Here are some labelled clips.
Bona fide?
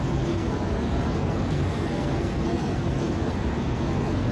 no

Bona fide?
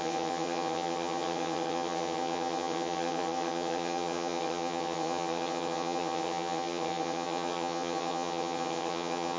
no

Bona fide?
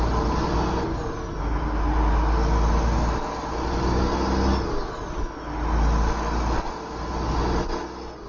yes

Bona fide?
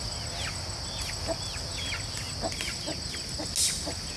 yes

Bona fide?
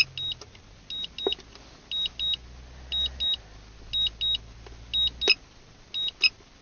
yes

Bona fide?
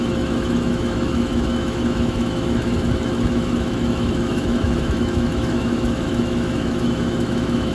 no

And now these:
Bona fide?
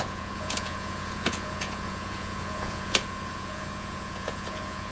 no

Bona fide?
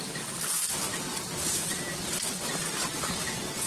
yes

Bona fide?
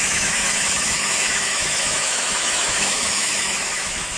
no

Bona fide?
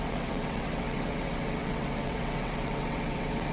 no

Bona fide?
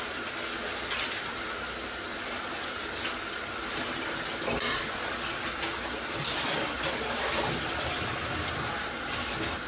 yes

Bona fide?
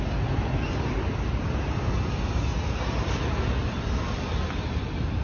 yes